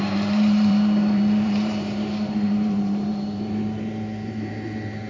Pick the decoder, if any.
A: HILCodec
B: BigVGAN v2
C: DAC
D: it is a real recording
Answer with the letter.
B